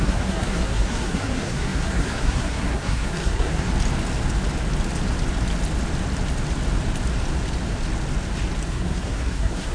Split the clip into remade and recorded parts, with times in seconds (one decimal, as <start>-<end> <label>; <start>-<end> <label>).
0.0-3.7 remade; 3.7-8.7 recorded; 8.7-9.7 remade